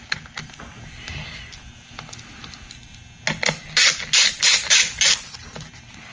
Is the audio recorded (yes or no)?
yes